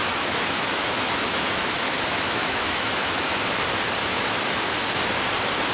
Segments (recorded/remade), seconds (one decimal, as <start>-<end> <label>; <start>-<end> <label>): 0.0-3.4 remade; 3.4-4.1 recorded; 4.1-4.6 remade; 4.6-5.7 recorded